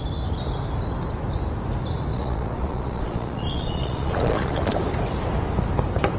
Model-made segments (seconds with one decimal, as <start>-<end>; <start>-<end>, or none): 2.1-4.7